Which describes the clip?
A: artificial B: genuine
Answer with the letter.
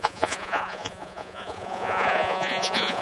A